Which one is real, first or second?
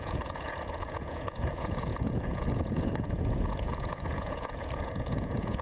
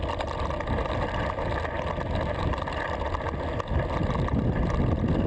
second